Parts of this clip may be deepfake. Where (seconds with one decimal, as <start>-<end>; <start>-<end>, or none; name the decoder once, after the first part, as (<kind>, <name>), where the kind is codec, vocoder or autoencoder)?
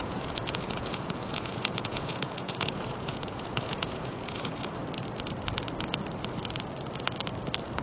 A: 0.0-4.8 (vocoder, Vocos)